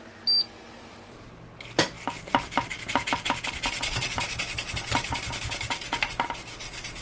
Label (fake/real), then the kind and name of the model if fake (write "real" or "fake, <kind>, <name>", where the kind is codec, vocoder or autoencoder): real